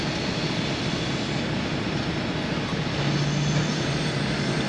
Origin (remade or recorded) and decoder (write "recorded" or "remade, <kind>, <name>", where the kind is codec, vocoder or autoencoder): recorded